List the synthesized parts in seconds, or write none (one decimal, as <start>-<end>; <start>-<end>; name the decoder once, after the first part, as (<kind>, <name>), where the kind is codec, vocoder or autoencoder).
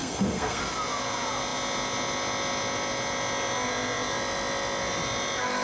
0.0-0.6 (codec, SNAC)